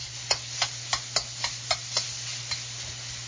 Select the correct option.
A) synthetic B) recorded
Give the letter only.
B